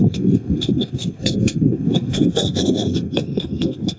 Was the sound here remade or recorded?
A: remade